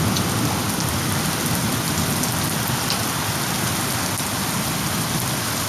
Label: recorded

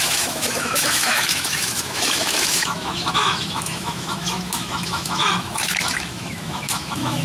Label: remade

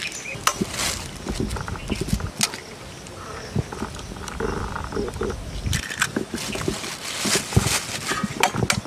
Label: recorded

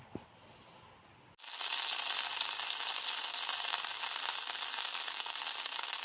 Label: recorded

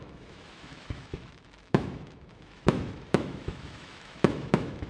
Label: remade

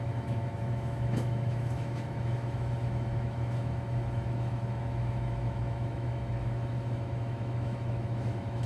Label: remade